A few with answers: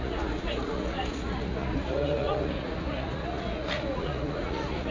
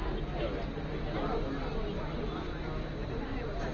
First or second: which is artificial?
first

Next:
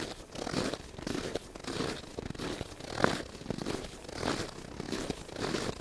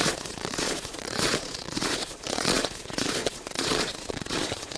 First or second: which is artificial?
second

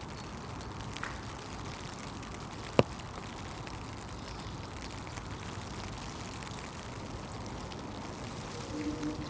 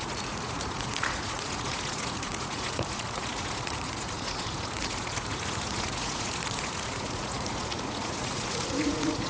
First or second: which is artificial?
second